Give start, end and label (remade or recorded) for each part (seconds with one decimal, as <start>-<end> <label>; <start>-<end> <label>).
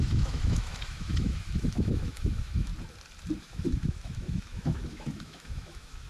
0.0-2.7 remade; 2.7-3.4 recorded; 3.4-6.1 remade